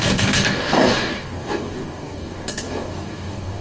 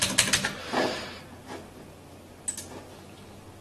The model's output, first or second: first